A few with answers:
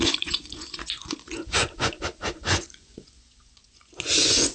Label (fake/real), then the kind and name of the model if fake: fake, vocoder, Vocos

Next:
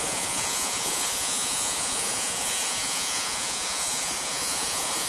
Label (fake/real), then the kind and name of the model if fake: fake, vocoder, Vocos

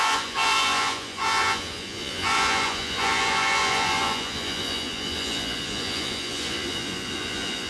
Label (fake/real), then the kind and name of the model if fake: fake, vocoder, Vocos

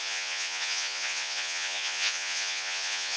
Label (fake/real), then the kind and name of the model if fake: fake, vocoder, Vocos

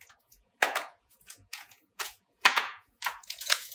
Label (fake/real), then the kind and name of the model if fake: fake, vocoder, Vocos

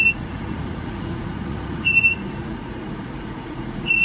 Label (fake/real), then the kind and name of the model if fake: fake, vocoder, Vocos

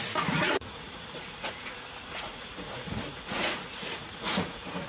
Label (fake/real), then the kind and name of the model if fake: fake, vocoder, Vocos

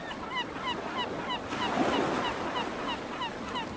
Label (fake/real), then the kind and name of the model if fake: real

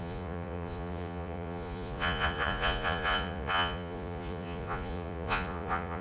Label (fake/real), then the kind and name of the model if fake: fake, vocoder, Vocos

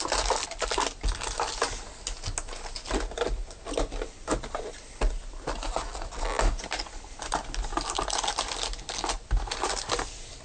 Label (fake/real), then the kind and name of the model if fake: real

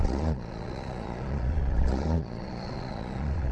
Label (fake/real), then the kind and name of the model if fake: fake, vocoder, Vocos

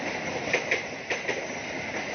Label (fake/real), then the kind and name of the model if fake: real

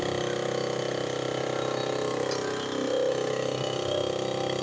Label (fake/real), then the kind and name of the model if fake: real